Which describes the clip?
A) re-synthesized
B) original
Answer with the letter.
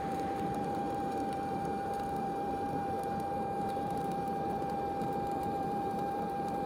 A